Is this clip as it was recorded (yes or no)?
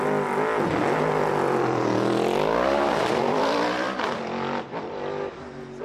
yes